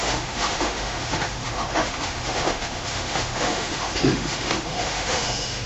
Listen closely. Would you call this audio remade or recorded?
remade